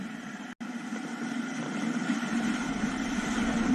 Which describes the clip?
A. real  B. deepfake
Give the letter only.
A